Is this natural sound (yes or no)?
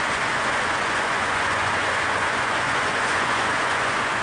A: no